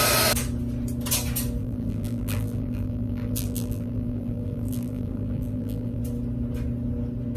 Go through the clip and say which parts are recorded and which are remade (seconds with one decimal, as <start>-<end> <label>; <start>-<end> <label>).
0.0-1.6 recorded; 1.6-6.0 remade; 6.0-7.4 recorded